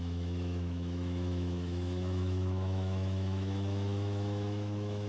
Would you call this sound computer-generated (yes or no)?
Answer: yes